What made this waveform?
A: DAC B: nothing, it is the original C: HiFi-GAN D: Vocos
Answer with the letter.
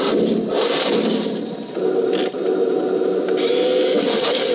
B